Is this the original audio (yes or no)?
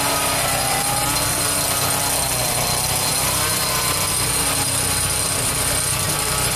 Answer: yes